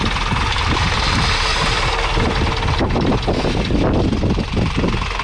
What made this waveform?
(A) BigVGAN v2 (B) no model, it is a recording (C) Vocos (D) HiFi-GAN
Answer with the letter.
B